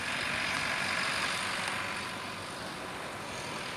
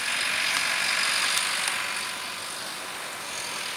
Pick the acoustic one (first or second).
second